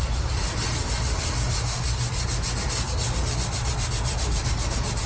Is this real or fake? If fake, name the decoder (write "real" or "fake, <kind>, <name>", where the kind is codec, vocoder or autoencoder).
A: real